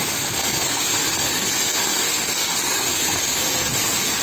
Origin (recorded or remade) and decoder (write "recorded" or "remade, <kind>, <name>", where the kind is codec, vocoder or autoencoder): remade, codec, SNAC